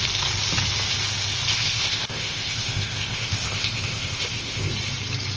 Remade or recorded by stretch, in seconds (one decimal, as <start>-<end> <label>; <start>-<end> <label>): 0.0-1.5 recorded; 1.5-4.7 remade; 4.7-5.4 recorded